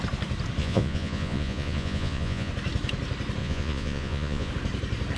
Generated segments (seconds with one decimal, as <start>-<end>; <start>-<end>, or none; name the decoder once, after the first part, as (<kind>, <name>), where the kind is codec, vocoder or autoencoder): 0.6-2.5 (vocoder, Vocos); 3.4-4.5